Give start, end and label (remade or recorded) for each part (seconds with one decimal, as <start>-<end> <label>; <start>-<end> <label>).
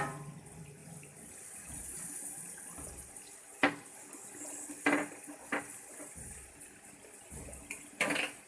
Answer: 0.0-8.5 recorded